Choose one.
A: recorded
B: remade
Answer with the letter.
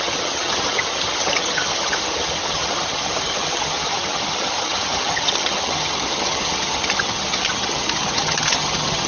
B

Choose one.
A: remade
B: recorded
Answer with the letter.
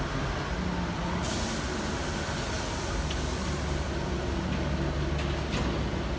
B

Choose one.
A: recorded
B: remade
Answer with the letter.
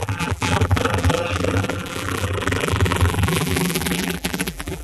B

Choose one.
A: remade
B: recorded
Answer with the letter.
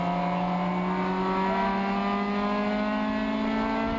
B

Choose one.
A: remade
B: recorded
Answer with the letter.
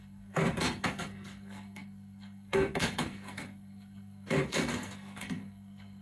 A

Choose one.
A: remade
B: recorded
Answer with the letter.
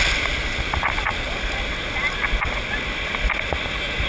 B